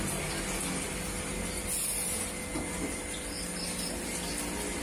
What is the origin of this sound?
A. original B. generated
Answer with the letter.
A